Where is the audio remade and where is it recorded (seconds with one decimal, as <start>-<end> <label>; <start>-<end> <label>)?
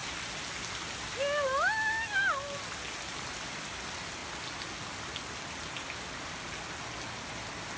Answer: 0.0-7.8 recorded